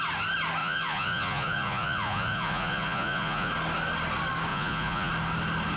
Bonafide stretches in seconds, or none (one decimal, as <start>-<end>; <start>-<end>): 0.0-0.6; 3.5-4.5; 5.1-5.8